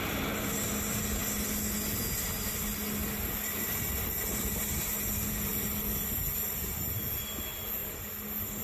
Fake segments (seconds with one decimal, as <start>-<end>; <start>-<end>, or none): none

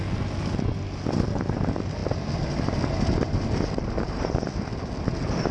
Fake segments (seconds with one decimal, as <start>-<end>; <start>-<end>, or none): 2.0-4.3